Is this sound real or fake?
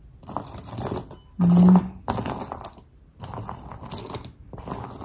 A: real